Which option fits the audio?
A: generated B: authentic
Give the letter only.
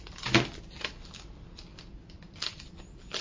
B